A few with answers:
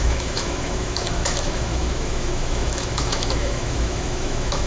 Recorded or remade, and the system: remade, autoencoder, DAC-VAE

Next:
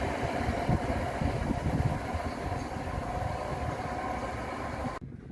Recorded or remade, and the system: recorded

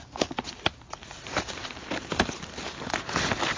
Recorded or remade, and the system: recorded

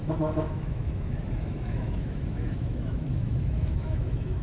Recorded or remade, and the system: remade, autoencoder, DAC-VAE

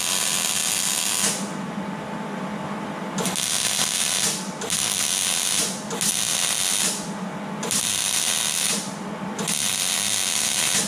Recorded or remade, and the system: recorded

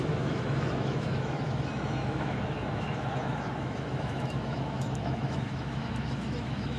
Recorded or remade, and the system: remade, autoencoder, DAC-VAE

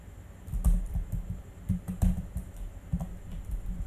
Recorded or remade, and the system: recorded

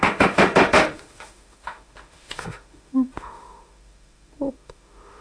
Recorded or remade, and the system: remade, autoencoder, DAC-VAE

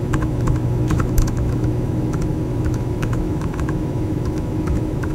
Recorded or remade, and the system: remade, autoencoder, DAC-VAE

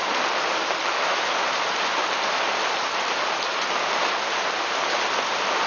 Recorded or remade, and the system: recorded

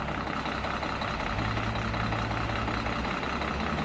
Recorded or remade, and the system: recorded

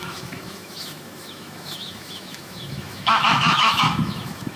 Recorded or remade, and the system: remade, autoencoder, DAC-VAE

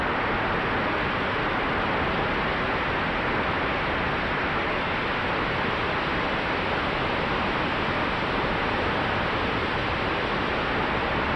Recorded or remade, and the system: recorded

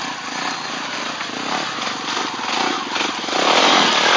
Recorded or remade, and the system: recorded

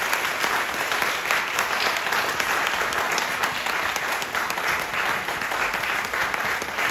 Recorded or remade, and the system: recorded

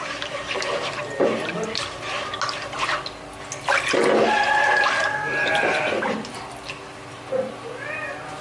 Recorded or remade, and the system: recorded